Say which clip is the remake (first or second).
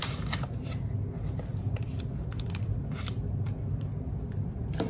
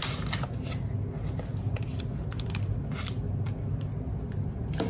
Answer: first